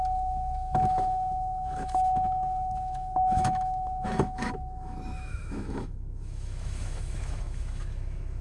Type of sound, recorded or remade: remade